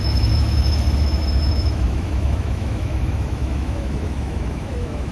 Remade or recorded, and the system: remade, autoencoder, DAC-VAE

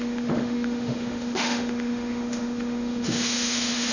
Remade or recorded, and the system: remade, autoencoder, DAC-VAE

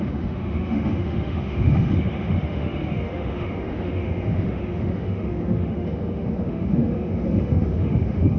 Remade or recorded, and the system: remade, autoencoder, DAC-VAE